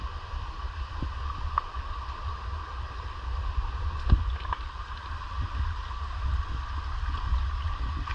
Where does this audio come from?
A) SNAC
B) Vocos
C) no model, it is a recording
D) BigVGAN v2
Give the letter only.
C